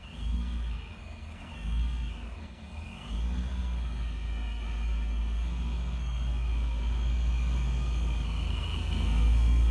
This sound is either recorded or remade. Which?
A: remade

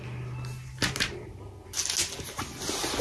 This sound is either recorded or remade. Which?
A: recorded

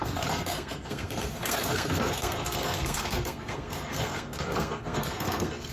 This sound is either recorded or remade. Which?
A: remade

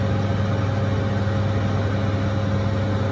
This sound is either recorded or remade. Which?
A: recorded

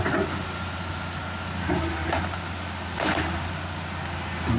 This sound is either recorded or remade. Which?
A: recorded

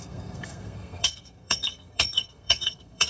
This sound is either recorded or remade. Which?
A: remade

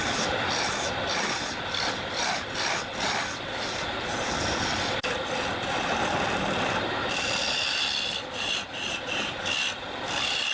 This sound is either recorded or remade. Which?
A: recorded